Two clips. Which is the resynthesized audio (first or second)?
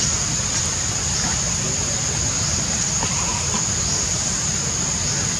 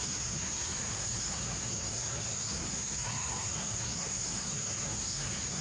second